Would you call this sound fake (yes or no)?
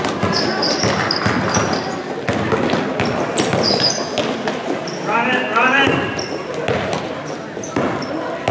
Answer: no